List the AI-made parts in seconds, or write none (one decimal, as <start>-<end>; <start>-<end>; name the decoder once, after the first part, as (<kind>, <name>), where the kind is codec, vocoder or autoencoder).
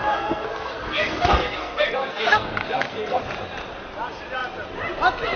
0.0-3.2 (codec, SNAC)